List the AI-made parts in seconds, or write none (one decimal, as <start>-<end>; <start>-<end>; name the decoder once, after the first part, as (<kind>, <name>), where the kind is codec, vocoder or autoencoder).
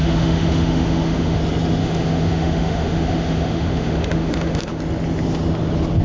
0.0-1.4 (autoencoder, DAC-VAE); 1.8-4.8